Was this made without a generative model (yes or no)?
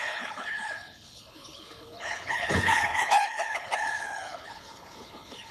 no